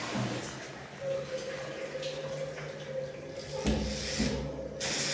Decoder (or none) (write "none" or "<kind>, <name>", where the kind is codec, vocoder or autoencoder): none